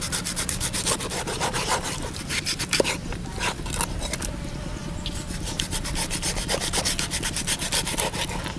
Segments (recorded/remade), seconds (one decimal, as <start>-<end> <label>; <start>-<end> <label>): 0.0-8.6 recorded